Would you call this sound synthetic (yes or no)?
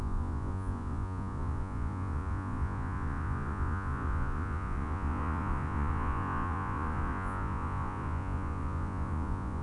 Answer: yes